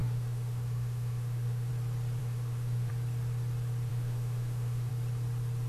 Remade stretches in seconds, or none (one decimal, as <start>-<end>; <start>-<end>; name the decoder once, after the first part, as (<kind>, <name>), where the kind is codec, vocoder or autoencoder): 0.0-1.7 (autoencoder, DAC-VAE); 2.2-2.9; 3.9-4.9